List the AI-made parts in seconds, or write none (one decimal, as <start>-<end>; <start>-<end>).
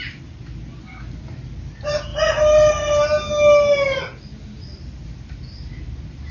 none